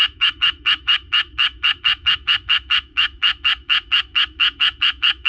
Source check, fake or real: fake